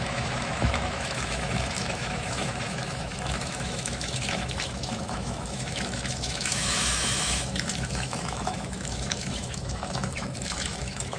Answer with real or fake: fake